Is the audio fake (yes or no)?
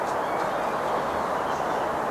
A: no